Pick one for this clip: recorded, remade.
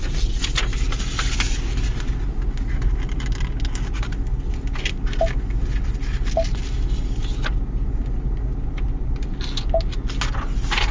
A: recorded